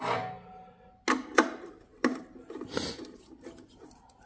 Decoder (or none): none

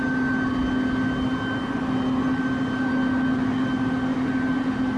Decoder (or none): none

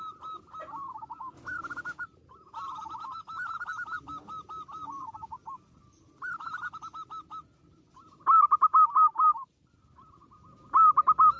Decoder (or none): none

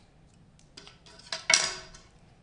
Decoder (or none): none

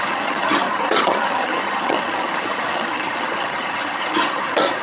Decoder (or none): vocoder, HiFi-GAN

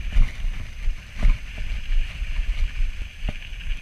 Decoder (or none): none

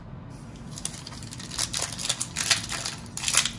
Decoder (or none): none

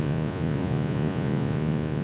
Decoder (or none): vocoder, Vocos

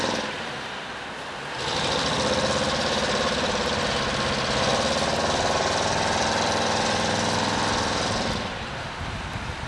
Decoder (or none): vocoder, BigVGAN v2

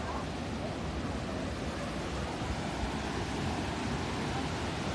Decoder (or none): none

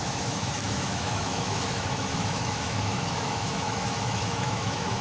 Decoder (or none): autoencoder, DAC-VAE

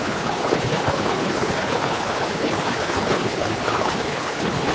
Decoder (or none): codec, HILCodec